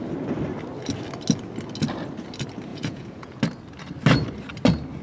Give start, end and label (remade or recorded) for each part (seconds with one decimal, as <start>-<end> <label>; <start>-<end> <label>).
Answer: 0.0-2.7 recorded; 2.7-3.4 remade; 3.4-5.0 recorded